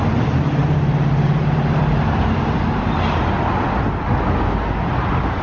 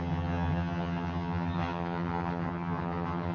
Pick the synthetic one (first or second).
second